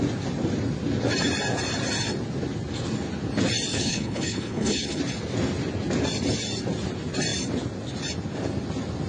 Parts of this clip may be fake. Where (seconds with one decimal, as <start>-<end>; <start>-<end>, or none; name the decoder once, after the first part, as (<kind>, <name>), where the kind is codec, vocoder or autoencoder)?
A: 3.7-5.0 (codec, HILCodec)